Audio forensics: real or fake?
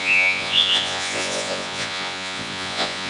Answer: fake